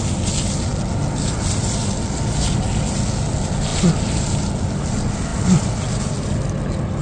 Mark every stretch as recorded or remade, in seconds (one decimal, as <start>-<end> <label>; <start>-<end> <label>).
0.0-7.0 recorded